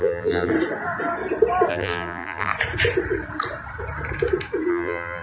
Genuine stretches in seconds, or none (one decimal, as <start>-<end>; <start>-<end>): 0.5-1.7; 2.5-4.7